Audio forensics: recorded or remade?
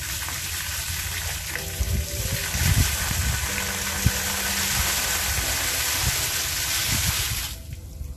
recorded